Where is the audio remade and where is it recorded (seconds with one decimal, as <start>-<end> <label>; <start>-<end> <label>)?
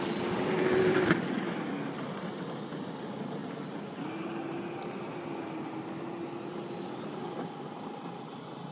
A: 0.0-8.7 recorded